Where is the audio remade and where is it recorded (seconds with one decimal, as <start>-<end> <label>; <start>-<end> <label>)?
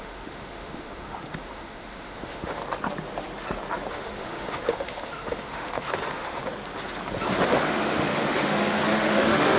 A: 0.0-2.6 remade; 2.6-3.9 recorded; 3.9-6.4 remade; 6.4-7.6 recorded; 7.6-9.6 remade